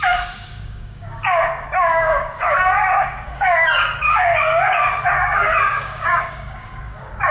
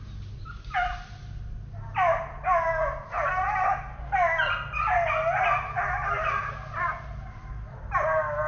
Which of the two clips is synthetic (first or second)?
first